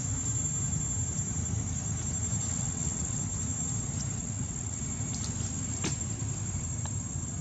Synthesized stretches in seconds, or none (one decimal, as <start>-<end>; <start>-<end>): 2.5-3.2; 4.2-4.8